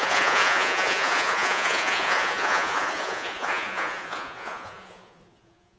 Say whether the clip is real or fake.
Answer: fake